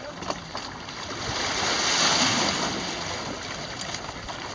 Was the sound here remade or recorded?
recorded